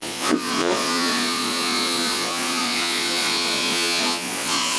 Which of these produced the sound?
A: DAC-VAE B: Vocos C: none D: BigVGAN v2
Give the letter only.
B